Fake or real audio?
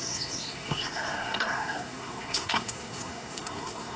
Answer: fake